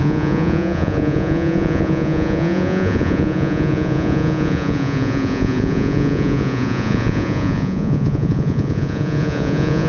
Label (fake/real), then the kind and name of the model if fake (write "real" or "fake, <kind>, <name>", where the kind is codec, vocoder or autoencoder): fake, vocoder, Vocos